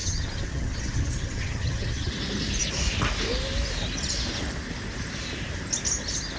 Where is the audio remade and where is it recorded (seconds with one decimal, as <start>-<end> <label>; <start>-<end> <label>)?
0.0-2.1 remade; 2.1-6.4 recorded